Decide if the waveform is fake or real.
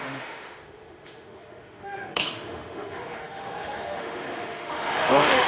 fake